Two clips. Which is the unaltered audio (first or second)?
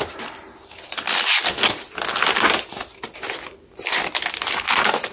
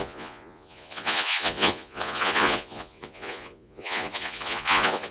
first